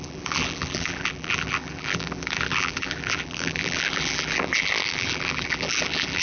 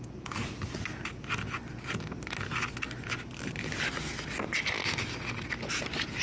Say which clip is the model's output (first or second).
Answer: first